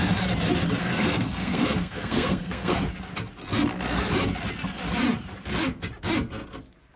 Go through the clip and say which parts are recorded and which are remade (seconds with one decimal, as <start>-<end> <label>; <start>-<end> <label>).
0.0-0.8 recorded; 0.8-2.8 remade; 2.8-7.0 recorded